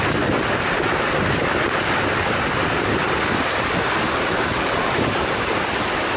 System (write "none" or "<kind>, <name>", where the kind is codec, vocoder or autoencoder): none